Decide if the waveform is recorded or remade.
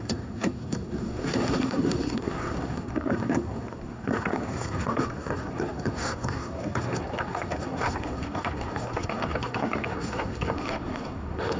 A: remade